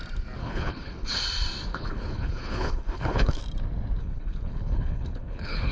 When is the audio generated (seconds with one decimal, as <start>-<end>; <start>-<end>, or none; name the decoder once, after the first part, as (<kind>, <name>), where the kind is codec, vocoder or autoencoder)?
0.4-1.2 (codec, HILCodec); 1.7-3.4; 4.0-5.7